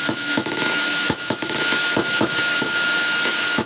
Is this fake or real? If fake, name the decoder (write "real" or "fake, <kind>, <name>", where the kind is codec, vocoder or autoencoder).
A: fake, autoencoder, DAC-VAE